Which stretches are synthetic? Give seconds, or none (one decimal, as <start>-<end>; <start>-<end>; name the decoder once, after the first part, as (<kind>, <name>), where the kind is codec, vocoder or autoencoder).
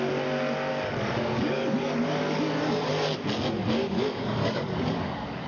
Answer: 0.7-2.9 (codec, DAC); 3.8-5.5